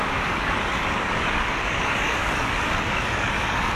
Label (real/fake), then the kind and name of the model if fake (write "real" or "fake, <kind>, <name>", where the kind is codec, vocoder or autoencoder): fake, codec, DAC